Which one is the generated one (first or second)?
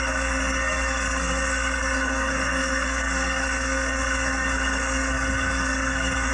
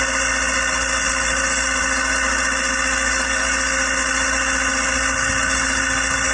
first